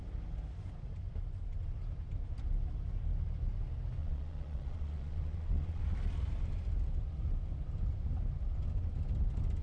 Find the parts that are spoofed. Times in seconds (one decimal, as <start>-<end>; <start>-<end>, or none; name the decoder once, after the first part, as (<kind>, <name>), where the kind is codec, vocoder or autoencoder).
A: 4.0-5.8 (vocoder, Vocos)